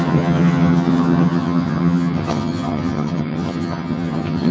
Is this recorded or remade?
remade